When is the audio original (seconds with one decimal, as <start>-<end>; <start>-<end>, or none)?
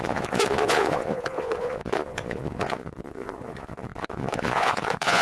none